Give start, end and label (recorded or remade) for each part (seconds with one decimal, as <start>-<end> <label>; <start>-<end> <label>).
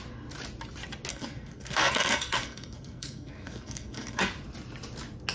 0.0-1.1 recorded; 1.1-4.3 remade; 4.3-5.3 recorded